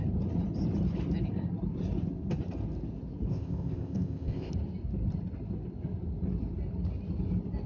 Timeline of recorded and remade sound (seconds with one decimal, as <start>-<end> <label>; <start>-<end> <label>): 0.0-3.3 recorded; 3.3-4.5 remade; 4.5-7.7 recorded